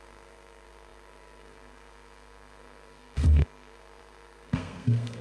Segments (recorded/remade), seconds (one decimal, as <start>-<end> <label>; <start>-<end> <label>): 0.0-5.2 remade